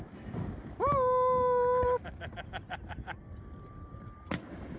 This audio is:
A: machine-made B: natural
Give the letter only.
B